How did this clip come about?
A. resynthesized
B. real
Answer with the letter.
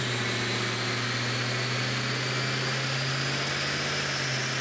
B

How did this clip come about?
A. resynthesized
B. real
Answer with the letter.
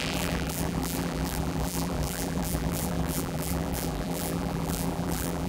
A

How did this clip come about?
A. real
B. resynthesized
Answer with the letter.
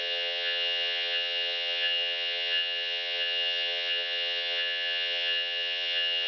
B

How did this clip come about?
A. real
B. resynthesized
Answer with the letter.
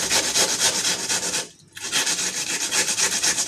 A